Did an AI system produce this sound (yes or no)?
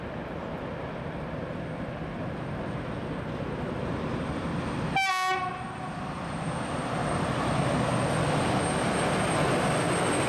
no